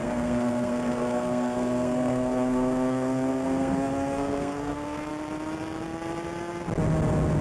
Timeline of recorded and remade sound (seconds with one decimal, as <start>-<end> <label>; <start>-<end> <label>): 0.0-5.1 remade; 5.1-7.4 recorded